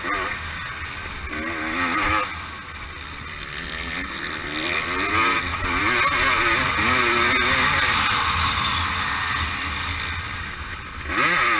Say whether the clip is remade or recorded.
recorded